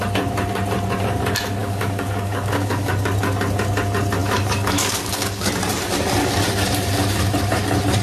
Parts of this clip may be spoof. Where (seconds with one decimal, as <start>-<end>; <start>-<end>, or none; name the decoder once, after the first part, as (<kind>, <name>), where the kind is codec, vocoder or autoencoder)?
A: 1.6-2.9 (codec, DAC); 4.2-5.5